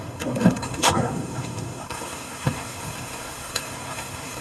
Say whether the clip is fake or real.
fake